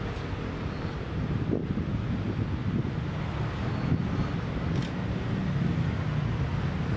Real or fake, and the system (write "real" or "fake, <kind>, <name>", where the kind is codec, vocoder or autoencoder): real